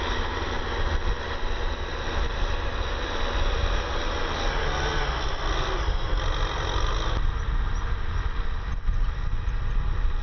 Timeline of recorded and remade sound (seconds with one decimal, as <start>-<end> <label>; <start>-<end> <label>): 0.0-10.2 recorded